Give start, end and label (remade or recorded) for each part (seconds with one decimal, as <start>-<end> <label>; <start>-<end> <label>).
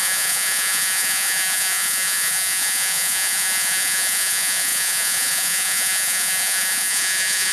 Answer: 0.0-7.5 remade